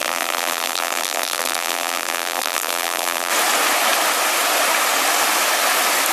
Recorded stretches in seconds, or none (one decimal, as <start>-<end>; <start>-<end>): 3.3-6.1